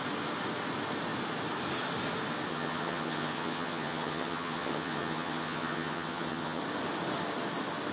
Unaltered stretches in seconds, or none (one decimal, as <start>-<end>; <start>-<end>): 0.0-2.5; 6.6-7.9